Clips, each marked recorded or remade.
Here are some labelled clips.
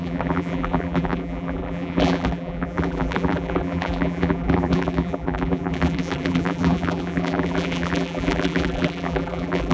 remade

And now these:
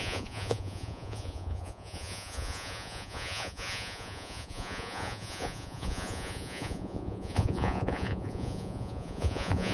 remade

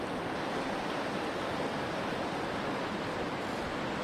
recorded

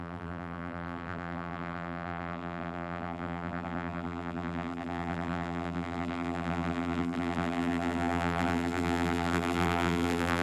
remade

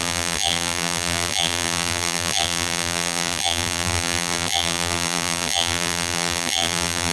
remade